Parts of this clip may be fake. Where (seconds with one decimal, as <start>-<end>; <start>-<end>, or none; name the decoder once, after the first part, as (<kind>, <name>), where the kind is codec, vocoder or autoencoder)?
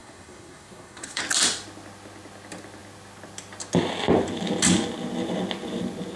0.0-1.2 (codec, SNAC)